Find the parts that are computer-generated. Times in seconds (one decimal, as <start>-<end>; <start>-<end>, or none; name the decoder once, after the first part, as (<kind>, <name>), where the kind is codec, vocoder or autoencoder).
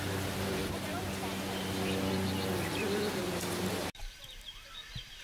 0.0-0.6 (vocoder, BigVGAN v2); 2.7-5.2